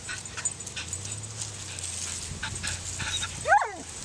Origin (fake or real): real